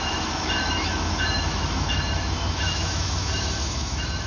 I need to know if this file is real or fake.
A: fake